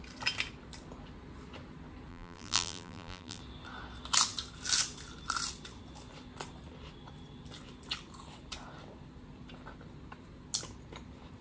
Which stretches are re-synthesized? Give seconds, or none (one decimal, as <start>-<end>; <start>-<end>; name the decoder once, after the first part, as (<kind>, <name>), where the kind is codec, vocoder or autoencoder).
2.1-3.4 (vocoder, BigVGAN v2)

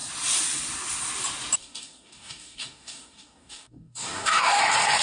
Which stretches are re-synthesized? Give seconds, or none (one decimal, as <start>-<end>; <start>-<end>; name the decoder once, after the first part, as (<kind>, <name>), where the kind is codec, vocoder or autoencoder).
1.6-4.6 (codec, DAC)

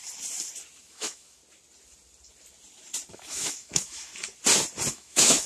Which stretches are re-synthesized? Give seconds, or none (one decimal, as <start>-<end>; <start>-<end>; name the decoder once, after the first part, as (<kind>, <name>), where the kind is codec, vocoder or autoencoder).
0.8-1.4 (autoencoder, DAC-VAE); 3.1-4.1; 4.9-5.5